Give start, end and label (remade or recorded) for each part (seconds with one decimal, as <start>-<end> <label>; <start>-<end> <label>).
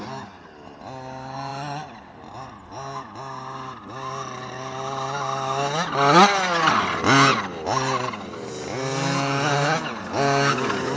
0.0-1.5 recorded; 1.5-2.2 remade; 2.2-11.0 recorded